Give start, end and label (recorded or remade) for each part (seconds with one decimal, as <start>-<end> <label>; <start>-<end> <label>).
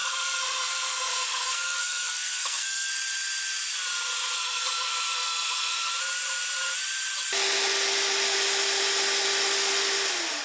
0.0-2.9 remade; 2.9-4.4 recorded; 4.4-5.9 remade; 5.9-10.4 recorded